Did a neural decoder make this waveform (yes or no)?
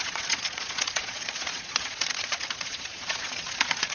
yes